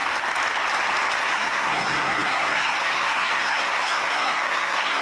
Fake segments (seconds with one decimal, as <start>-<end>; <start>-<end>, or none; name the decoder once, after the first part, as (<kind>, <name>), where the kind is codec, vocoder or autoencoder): 1.2-5.0 (codec, SNAC)